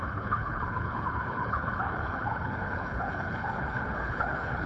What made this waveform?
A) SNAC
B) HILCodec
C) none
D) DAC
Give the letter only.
B